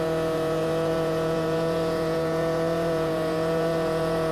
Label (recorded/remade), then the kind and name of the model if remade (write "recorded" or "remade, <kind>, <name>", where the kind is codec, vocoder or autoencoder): remade, vocoder, Vocos